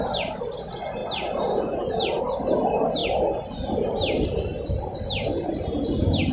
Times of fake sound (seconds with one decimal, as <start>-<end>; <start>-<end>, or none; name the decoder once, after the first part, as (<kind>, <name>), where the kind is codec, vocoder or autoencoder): none